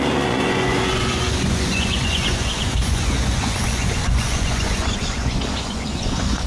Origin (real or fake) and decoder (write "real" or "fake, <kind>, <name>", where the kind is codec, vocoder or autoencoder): fake, vocoder, Vocos